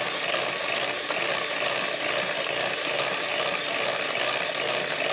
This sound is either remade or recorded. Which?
recorded